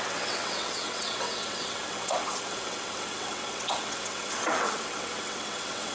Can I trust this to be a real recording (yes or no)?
no